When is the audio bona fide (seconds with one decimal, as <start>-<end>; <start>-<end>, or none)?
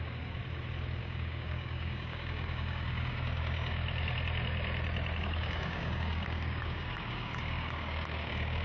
0.4-1.0; 3.8-5.2